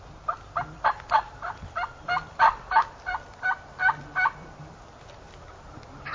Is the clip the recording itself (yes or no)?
yes